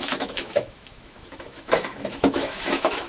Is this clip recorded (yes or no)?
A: no